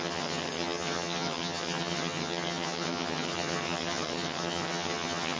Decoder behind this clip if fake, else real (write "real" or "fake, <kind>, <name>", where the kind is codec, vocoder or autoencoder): fake, vocoder, HiFi-GAN